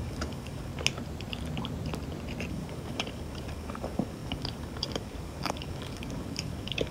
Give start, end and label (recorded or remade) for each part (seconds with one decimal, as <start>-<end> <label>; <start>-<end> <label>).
0.0-0.7 remade; 0.7-2.5 recorded; 2.5-6.9 remade